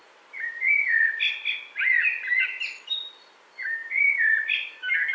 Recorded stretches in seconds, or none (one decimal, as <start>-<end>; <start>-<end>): 0.5-3.8